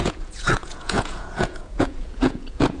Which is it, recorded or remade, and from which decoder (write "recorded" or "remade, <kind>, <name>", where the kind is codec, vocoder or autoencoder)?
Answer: remade, vocoder, Vocos